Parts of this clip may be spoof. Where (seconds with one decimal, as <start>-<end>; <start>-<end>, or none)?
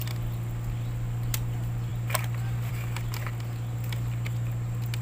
none